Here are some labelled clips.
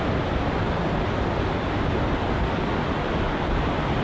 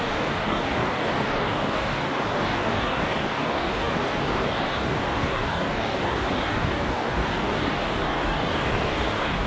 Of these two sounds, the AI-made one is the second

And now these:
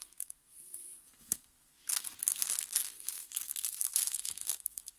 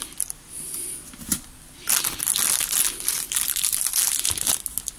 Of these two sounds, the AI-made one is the first